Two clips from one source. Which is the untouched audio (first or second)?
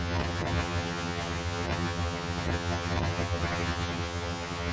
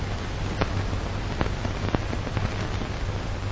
second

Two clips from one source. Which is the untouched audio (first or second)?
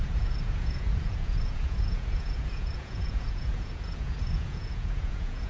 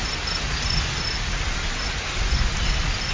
second